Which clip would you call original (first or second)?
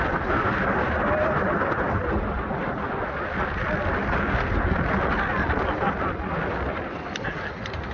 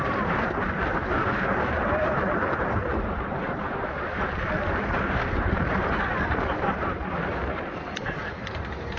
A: first